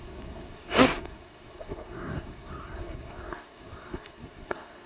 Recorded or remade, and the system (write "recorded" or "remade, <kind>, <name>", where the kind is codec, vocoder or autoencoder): remade, codec, SNAC